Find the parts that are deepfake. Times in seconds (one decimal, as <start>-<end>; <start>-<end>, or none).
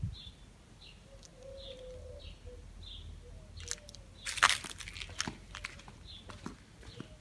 none